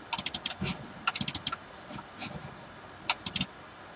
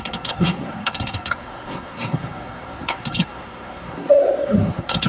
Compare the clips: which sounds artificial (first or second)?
second